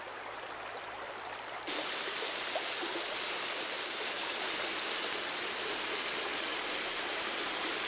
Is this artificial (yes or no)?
no